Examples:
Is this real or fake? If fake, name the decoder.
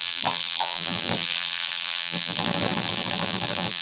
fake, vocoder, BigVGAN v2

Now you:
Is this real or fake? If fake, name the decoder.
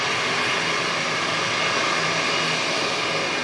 real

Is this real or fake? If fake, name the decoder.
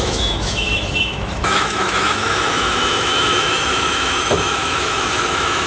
fake, autoencoder, DAC-VAE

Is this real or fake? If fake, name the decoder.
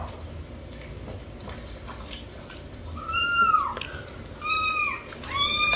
real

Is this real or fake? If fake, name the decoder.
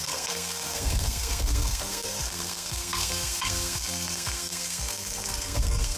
fake, codec, SNAC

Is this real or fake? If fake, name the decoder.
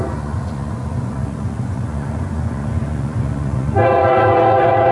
fake, vocoder, Vocos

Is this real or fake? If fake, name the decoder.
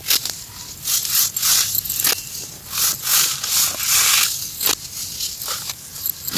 real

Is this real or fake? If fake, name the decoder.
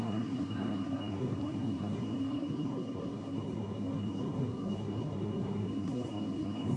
fake, codec, SNAC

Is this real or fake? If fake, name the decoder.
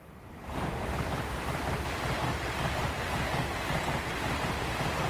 fake, vocoder, BigVGAN v2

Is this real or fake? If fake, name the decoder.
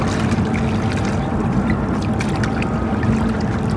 real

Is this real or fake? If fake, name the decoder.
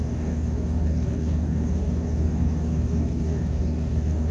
fake, codec, DAC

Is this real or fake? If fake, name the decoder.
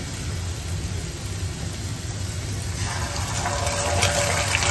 real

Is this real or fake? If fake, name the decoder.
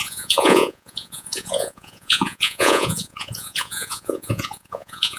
fake, vocoder, Vocos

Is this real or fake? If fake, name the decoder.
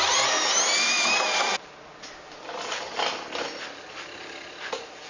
real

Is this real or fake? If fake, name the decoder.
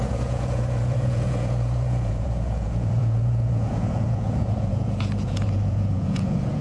fake, vocoder, Vocos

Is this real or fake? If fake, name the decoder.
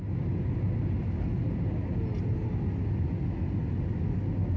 real